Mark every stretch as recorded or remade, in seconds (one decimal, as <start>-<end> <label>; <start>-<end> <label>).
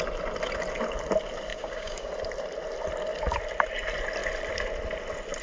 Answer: 0.0-1.5 recorded; 1.5-2.1 remade; 2.1-5.4 recorded